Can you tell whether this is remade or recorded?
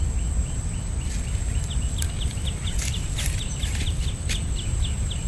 recorded